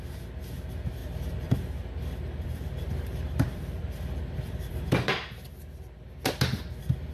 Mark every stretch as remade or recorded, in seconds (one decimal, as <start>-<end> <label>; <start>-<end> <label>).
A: 0.0-1.0 recorded; 1.0-5.1 remade; 5.1-7.1 recorded